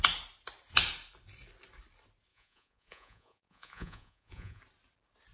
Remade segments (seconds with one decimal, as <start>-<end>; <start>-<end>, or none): 2.3-4.6